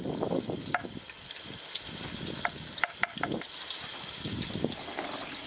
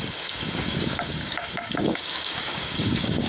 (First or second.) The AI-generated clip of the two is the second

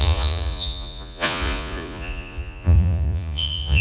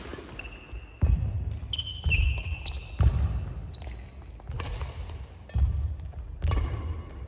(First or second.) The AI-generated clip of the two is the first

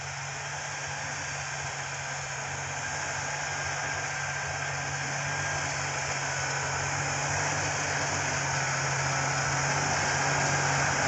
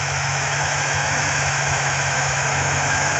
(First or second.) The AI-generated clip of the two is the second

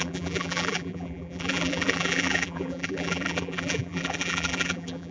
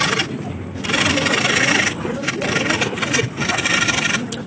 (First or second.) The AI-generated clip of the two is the first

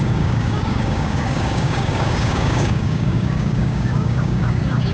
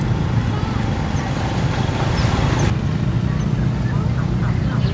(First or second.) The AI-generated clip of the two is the first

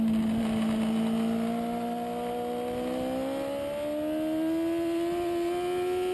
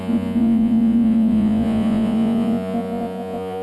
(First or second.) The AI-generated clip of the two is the second